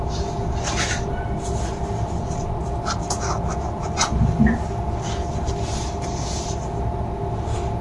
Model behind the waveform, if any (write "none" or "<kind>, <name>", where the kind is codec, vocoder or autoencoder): none